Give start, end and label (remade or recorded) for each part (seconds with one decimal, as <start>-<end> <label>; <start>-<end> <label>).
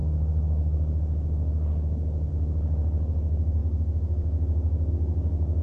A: 0.0-5.6 recorded